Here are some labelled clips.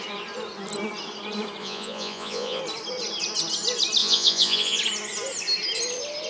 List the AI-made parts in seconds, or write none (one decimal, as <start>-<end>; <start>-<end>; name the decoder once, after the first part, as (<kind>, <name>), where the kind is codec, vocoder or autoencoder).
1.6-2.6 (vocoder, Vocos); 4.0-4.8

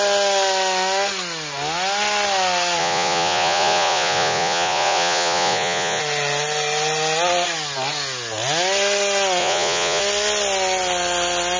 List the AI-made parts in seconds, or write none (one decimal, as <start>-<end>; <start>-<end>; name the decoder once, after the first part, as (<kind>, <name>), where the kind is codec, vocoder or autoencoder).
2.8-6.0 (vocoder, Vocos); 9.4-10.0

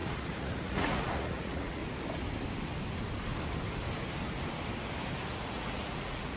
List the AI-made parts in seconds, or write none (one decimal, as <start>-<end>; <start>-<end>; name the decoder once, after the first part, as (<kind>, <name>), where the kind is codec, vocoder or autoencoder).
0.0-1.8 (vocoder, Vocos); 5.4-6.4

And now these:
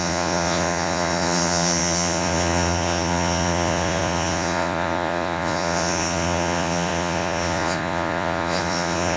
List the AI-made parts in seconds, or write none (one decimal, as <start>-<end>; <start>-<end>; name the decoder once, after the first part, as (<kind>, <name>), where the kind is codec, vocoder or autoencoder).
0.0-9.2 (vocoder, Vocos)

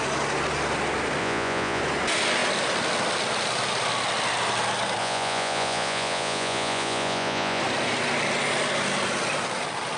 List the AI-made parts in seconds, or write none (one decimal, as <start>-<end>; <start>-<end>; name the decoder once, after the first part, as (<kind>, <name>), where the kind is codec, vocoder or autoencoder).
1.2-1.8 (vocoder, Vocos); 5.0-7.6

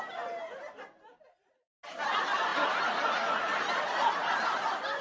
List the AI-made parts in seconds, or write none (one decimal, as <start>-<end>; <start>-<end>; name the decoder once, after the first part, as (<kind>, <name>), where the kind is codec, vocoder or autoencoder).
none

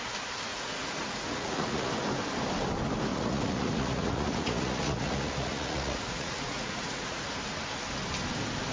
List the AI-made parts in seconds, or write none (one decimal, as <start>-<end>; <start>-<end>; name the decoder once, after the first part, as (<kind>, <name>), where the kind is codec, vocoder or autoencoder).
0.5-1.9 (vocoder, Vocos); 3.1-7.2